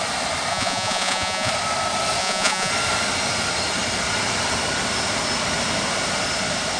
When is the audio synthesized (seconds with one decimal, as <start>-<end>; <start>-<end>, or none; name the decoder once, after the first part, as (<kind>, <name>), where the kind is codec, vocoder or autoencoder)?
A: 0.5-1.5 (vocoder, Vocos); 2.2-2.7